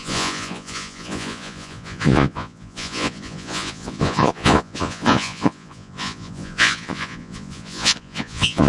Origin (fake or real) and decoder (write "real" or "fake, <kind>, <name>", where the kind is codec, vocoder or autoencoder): fake, vocoder, Vocos